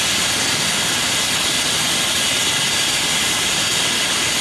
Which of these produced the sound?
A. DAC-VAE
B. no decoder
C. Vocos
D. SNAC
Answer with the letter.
B